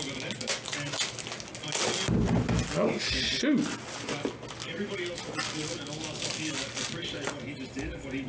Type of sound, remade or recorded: recorded